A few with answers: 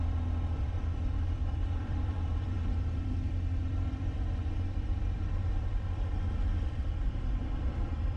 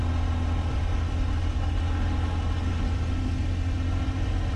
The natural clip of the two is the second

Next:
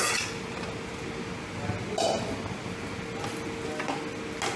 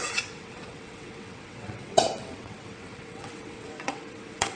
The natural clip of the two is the first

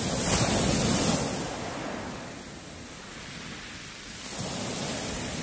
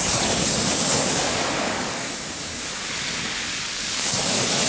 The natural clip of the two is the first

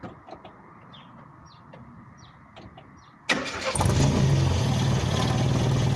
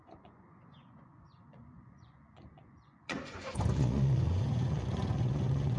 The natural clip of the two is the first